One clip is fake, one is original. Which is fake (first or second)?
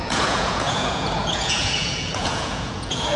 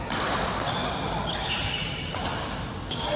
first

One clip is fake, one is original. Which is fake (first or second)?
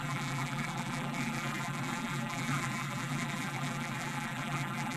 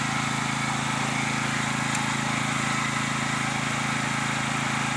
first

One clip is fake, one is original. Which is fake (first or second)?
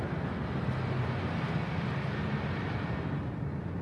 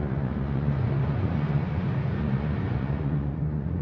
second